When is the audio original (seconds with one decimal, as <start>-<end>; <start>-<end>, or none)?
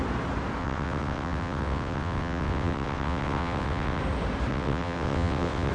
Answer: 0.0-0.6; 4.0-4.5